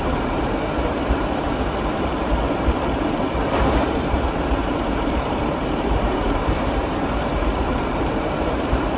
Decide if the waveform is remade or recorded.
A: remade